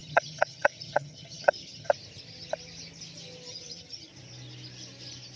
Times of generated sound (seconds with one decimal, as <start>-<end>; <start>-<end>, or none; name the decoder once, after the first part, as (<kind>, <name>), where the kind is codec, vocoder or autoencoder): 0.0-1.9 (vocoder, HiFi-GAN); 3.5-4.1